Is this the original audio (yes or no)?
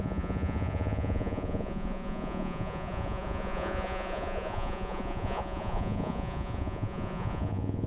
no